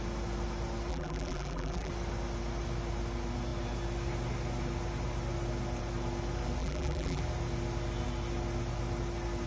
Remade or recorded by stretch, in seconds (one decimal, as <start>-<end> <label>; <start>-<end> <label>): 0.0-0.9 recorded; 0.9-1.9 remade; 1.9-6.6 recorded; 6.6-7.2 remade; 7.2-9.5 recorded